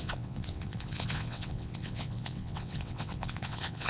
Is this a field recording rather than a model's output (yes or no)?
no